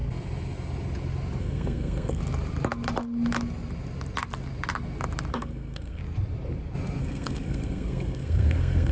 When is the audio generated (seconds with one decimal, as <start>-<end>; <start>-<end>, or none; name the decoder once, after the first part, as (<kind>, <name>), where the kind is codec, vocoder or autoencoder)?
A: 1.4-2.2 (codec, SNAC); 5.3-6.0; 7.0-8.9